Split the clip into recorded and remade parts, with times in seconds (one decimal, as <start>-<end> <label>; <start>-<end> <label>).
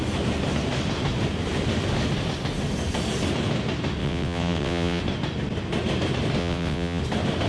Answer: 0.0-4.0 recorded; 4.0-5.0 remade; 5.0-6.4 recorded; 6.4-7.0 remade; 7.0-7.5 recorded